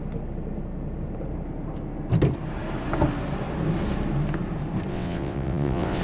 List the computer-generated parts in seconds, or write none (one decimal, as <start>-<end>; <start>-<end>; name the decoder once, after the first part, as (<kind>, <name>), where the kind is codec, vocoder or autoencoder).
4.9-6.0 (vocoder, WaveNeXt)

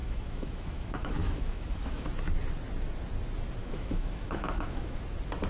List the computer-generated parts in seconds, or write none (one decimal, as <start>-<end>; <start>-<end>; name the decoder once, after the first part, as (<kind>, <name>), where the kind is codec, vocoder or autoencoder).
0.0-2.1 (autoencoder, DAC-VAE); 3.6-5.0